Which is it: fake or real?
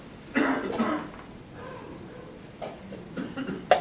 real